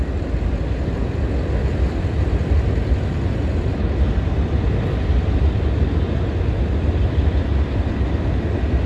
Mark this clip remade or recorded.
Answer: recorded